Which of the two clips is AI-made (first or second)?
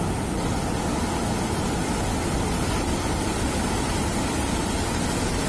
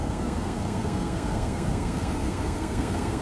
second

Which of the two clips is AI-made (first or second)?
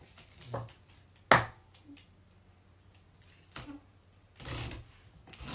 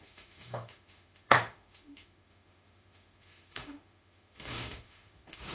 second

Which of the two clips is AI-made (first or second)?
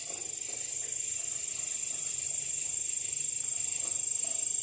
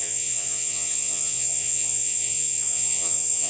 second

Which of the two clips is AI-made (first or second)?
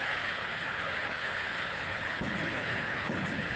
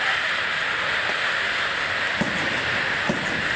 first